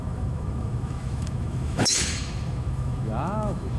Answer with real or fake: fake